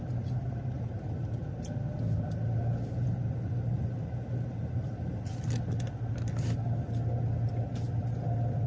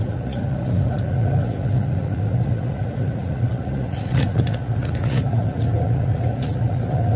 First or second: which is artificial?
second